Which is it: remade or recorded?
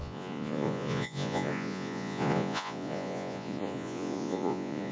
remade